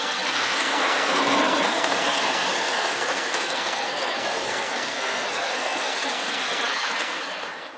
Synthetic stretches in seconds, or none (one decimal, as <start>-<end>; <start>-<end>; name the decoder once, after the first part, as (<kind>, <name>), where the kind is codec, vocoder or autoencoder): 0.0-7.8 (codec, SNAC)